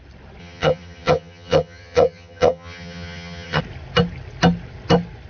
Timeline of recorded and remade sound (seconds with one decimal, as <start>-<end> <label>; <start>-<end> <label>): 0.0-0.4 recorded; 0.4-3.6 remade; 3.6-5.3 recorded